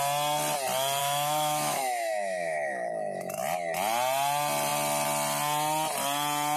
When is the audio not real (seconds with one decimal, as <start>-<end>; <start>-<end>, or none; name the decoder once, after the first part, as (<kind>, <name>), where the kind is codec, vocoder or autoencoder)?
1.0-3.4 (autoencoder, DAC-VAE)